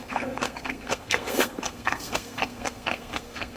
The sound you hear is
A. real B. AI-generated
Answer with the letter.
B